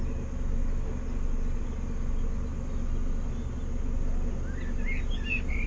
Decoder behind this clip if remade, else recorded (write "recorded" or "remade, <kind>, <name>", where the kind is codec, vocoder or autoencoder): recorded